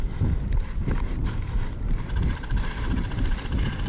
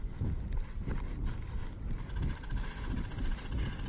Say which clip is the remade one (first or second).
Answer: first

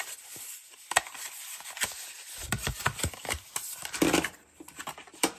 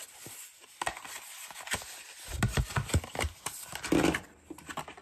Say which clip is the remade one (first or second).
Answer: first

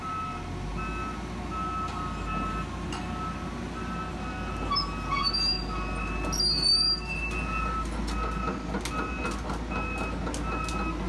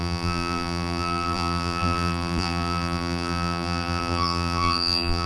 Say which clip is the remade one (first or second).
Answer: second